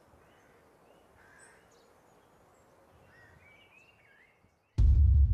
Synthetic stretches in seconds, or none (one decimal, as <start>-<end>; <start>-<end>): none

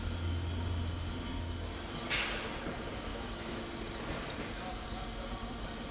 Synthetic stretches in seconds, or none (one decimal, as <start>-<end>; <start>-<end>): 3.1-3.6

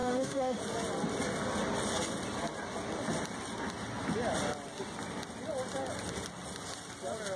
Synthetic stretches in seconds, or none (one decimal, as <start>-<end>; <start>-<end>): 0.0-0.6